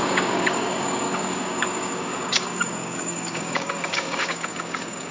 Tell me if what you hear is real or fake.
fake